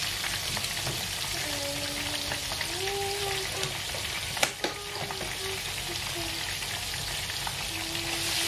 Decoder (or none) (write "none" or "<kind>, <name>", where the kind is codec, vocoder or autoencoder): none